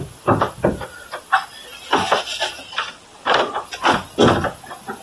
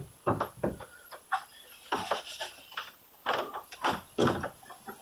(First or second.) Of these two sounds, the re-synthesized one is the second